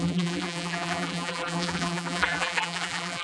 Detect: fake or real fake